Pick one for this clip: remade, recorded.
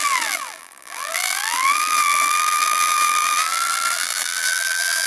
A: remade